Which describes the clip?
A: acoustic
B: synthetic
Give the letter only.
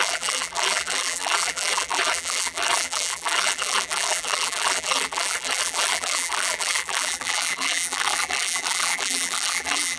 B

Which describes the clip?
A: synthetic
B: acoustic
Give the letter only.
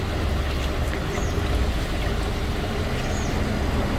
B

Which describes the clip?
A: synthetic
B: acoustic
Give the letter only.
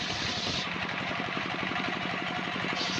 A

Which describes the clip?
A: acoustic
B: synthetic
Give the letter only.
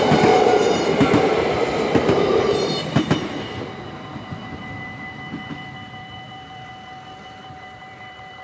B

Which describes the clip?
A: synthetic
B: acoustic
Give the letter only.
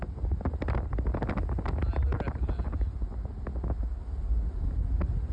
B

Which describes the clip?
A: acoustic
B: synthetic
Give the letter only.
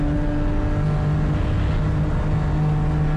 A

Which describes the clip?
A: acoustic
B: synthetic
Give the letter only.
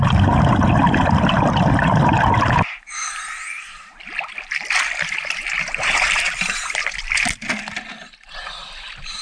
A